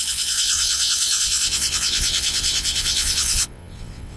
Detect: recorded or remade remade